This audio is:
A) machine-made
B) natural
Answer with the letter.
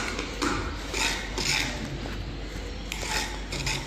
B